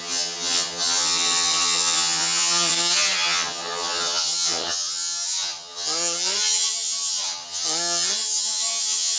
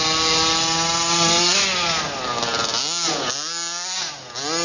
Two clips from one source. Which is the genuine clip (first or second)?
second